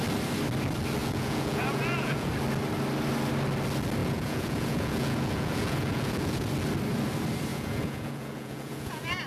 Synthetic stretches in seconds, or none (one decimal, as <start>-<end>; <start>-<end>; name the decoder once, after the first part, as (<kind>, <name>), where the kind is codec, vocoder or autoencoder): 1.0-2.3 (vocoder, Vocos); 4.0-6.5; 7.5-9.3